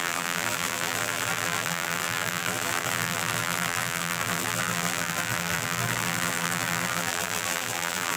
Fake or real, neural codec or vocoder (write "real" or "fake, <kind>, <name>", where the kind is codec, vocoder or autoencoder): fake, vocoder, BigVGAN v2